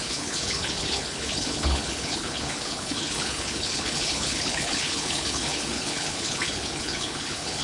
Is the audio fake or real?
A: fake